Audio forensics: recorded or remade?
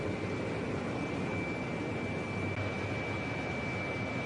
recorded